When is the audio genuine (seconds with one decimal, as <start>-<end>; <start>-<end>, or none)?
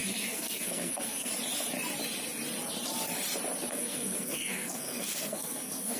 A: 1.3-3.7